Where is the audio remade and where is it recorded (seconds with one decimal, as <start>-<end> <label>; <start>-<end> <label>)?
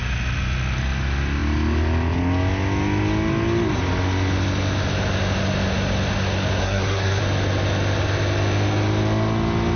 0.0-6.6 recorded; 6.6-7.2 remade; 7.2-9.8 recorded